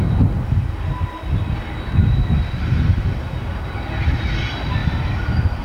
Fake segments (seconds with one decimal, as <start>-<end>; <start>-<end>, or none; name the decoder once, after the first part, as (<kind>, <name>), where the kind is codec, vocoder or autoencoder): none